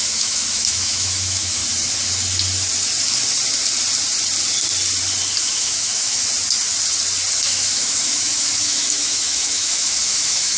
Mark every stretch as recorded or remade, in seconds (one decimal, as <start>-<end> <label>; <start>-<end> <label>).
0.0-1.6 remade; 1.6-5.4 recorded; 5.4-6.2 remade; 6.2-7.4 recorded; 7.4-10.6 remade